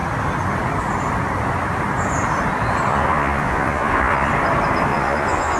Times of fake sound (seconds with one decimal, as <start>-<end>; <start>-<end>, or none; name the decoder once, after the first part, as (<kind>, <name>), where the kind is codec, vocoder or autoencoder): 2.9-4.3 (vocoder, Vocos); 4.9-5.6